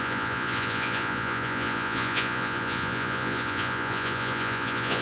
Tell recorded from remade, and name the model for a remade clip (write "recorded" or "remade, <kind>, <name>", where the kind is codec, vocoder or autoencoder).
remade, vocoder, Vocos